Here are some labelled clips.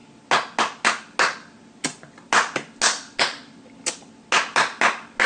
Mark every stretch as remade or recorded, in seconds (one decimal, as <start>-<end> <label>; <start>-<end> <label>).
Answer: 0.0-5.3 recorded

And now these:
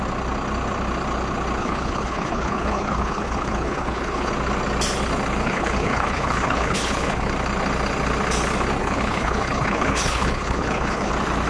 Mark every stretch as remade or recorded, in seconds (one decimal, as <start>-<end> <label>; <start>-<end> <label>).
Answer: 0.0-1.6 recorded; 1.6-4.3 remade; 4.3-5.4 recorded; 5.4-7.3 remade; 7.3-8.8 recorded; 8.8-11.1 remade; 11.1-11.5 recorded

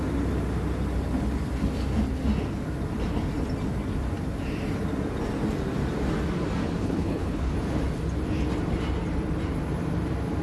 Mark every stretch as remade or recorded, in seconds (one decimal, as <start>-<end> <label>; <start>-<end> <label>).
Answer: 0.0-6.8 recorded; 6.8-7.5 remade; 7.5-10.4 recorded

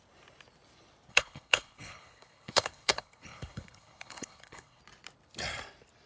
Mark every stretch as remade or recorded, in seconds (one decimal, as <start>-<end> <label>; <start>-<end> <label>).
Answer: 0.0-1.1 recorded; 1.1-4.8 remade; 4.8-6.1 recorded